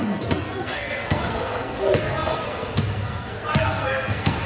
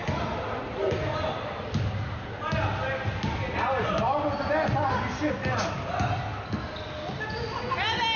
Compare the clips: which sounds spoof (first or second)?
first